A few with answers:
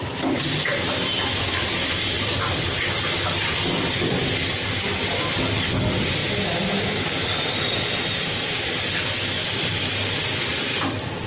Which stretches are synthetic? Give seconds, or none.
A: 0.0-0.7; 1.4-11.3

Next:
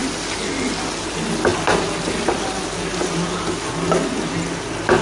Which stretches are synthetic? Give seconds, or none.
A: 1.5-3.1

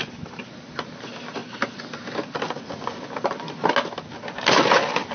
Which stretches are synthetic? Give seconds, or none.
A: none

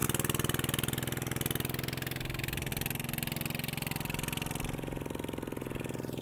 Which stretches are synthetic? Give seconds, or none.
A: none

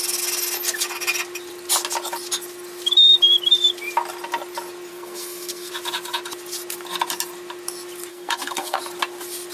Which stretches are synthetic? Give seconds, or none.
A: 4.9-5.7; 8.1-8.8

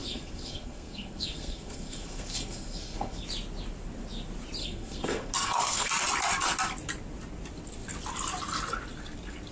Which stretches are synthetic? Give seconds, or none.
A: 0.0-3.2; 4.6-5.9

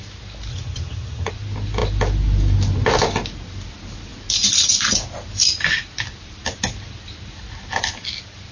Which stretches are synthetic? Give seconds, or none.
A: 0.5-1.3